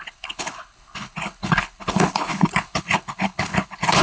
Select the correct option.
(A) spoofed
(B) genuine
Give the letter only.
A